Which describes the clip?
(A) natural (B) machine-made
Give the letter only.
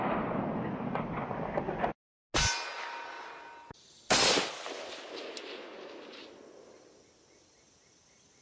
A